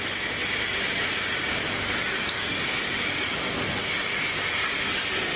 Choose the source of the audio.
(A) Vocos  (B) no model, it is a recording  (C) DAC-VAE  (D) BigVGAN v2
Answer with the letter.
B